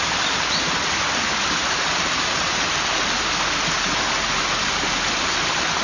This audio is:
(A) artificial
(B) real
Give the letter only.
B